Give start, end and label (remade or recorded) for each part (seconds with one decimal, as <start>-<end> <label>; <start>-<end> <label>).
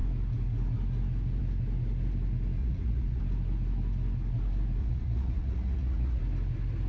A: 0.0-2.6 recorded; 2.6-3.2 remade; 3.2-4.8 recorded; 4.8-6.2 remade; 6.2-6.9 recorded